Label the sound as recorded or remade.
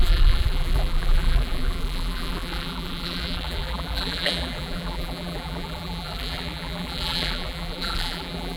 remade